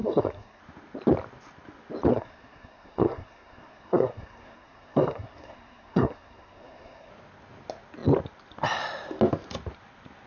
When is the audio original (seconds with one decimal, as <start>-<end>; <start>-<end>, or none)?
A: 0.6-2.1; 7.1-10.3